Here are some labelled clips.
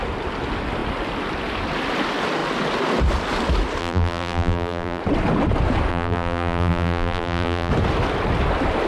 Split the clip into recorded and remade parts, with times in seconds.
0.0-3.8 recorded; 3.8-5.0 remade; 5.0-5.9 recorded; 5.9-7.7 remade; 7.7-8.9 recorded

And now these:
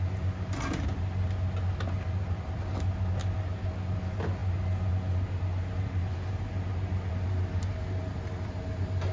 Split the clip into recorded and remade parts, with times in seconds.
0.0-9.1 recorded

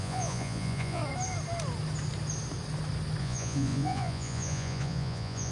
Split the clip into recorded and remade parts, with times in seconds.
0.0-1.0 remade; 1.0-3.2 recorded; 3.2-5.5 remade

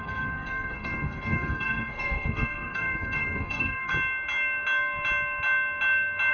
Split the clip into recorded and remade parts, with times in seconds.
0.0-3.9 remade; 3.9-6.3 recorded

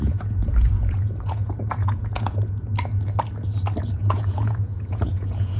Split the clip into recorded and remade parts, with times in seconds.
0.0-2.7 remade; 2.7-3.9 recorded; 3.9-5.6 remade

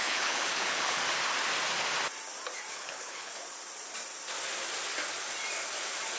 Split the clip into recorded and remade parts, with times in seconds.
0.0-1.0 remade; 1.0-2.7 recorded; 2.7-3.3 remade; 3.3-6.2 recorded

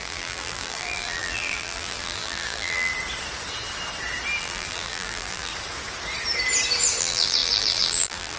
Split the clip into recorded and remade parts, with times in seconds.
0.0-2.9 remade; 2.9-4.4 recorded; 4.4-5.5 remade; 5.5-7.0 recorded; 7.0-8.4 remade